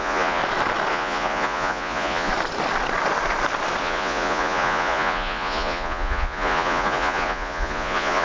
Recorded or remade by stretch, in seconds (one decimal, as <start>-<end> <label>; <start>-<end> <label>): 0.0-0.4 remade; 0.4-0.9 recorded; 0.9-2.3 remade; 2.3-3.8 recorded; 3.8-8.2 remade

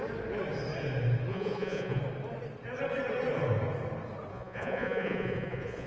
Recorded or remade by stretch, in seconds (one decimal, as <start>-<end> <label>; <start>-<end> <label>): 0.0-1.3 recorded; 1.3-2.0 remade; 2.0-4.3 recorded; 4.3-5.9 remade